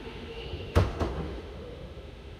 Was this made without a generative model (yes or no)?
no